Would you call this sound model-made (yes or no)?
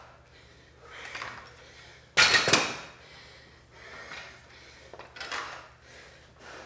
no